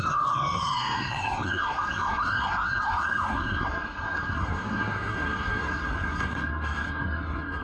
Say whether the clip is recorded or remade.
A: remade